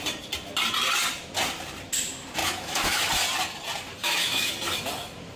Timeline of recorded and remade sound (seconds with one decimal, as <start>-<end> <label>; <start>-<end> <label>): 0.0-2.4 recorded; 2.4-3.1 remade; 3.1-4.0 recorded; 4.0-4.5 remade; 4.5-5.4 recorded